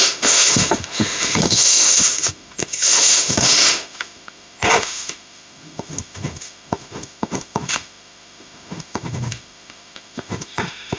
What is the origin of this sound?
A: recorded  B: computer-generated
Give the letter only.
B